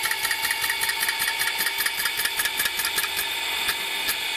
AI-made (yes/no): no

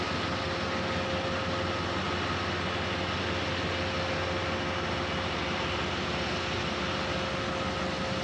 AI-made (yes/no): no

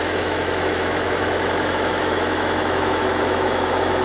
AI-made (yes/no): yes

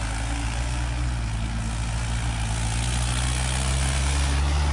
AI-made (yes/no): no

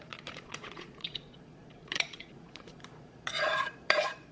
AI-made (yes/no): yes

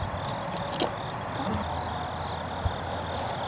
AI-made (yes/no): no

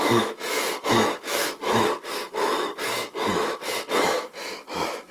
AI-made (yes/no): yes